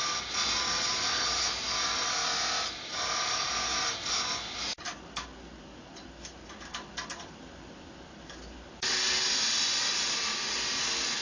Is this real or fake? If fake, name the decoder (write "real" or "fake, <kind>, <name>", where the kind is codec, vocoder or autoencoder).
real